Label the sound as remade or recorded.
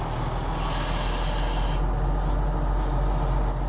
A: recorded